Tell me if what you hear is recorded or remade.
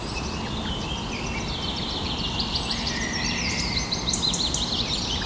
recorded